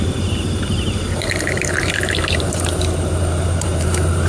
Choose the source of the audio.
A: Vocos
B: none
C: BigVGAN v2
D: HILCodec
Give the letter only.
C